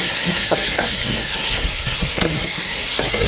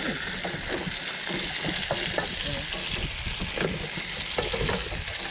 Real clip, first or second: second